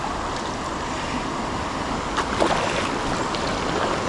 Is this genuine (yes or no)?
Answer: yes